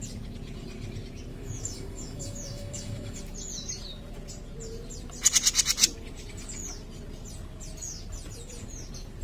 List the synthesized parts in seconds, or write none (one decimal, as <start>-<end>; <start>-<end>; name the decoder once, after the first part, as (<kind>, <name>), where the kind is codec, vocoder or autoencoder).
1.3-3.2 (autoencoder, DAC-VAE)